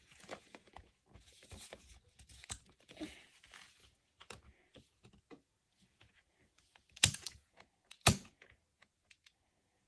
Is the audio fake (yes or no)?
yes